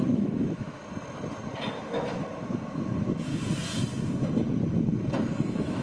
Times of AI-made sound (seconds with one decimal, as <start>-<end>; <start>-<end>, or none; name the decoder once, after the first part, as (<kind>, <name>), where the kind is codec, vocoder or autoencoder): 0.0-0.8 (autoencoder, DAC-VAE); 1.8-3.3; 5.3-5.8